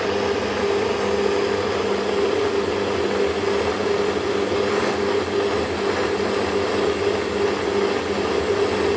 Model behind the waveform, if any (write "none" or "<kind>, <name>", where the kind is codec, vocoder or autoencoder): none